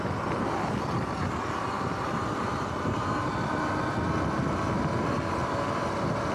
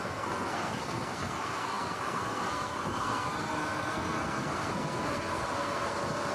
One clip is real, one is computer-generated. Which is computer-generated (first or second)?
second